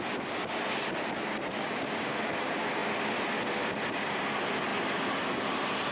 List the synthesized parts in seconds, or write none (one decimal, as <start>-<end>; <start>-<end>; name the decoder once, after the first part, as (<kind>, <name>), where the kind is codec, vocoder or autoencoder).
none